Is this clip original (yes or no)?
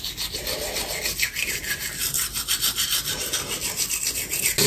yes